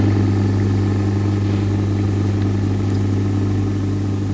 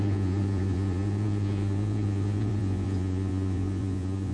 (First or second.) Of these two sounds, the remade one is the second